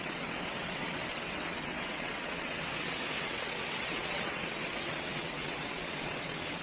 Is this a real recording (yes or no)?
no